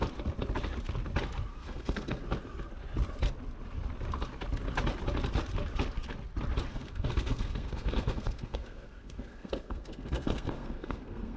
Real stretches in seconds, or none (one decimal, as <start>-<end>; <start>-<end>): 0.0-1.5; 2.2-6.7